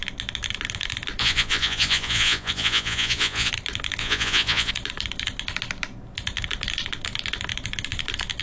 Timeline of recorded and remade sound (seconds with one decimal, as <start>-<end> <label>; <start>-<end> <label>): 0.0-1.2 recorded; 1.2-3.5 remade; 3.5-4.0 recorded; 4.0-4.7 remade; 4.7-8.4 recorded